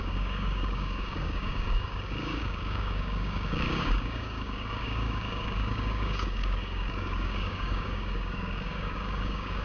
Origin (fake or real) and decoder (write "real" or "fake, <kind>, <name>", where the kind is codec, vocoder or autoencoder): fake, codec, DAC